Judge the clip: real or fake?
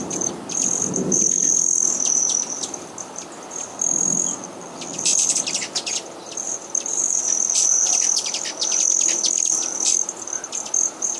real